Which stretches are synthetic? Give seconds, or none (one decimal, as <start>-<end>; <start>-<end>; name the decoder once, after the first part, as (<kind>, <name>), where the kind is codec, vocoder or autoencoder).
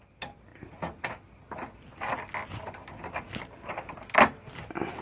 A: none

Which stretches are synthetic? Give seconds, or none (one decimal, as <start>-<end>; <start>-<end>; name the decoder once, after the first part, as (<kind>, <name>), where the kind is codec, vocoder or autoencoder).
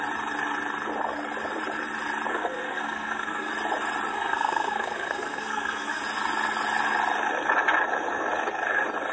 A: 2.3-3.5 (codec, SNAC); 4.1-6.0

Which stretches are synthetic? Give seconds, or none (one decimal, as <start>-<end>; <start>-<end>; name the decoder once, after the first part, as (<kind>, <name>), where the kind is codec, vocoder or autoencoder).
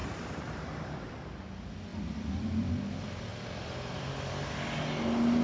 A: 0.0-1.1 (vocoder, BigVGAN v2); 1.9-2.7; 3.3-4.3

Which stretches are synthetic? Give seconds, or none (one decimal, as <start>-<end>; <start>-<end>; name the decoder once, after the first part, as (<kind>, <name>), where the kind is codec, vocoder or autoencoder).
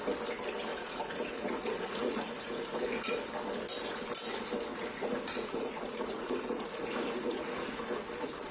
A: 0.7-3.1 (vocoder, Vocos); 4.7-7.8